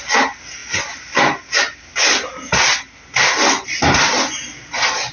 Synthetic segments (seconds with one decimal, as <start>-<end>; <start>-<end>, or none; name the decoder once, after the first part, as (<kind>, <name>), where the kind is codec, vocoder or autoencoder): none